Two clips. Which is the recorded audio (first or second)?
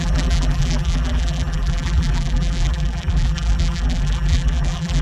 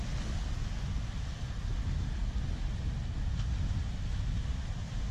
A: second